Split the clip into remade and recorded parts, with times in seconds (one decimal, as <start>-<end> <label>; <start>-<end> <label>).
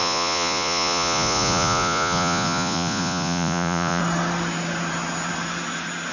0.0-4.0 remade; 4.0-6.1 recorded